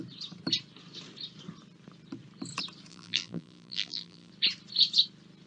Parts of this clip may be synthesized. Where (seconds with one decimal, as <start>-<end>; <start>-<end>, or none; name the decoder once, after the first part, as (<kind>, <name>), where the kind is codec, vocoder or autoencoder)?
2.9-4.3 (vocoder, BigVGAN v2)

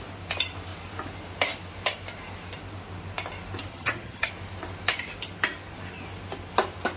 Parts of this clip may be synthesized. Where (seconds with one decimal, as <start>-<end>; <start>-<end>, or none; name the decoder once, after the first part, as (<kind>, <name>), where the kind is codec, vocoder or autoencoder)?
3.7-4.3 (vocoder, HiFi-GAN)